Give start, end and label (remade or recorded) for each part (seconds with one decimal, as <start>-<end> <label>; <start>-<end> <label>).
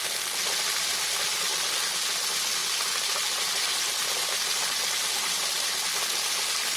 0.0-6.8 recorded